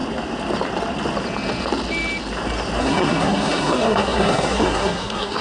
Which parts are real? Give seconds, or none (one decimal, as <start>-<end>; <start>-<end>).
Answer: 0.0-2.8